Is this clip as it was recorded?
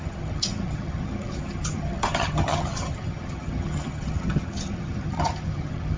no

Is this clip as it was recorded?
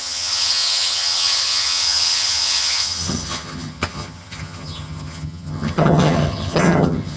no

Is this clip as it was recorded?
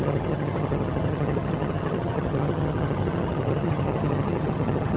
no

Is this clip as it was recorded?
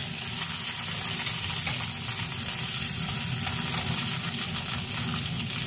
yes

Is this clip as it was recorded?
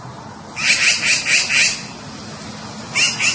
yes